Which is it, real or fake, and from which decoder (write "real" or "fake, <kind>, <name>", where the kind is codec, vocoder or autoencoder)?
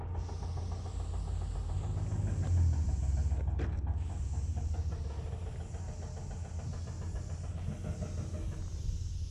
real